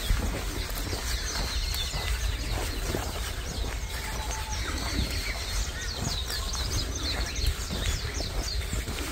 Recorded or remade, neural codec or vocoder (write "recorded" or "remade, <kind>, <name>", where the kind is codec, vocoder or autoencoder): remade, vocoder, BigVGAN v2